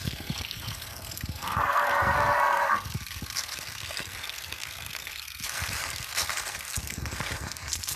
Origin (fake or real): fake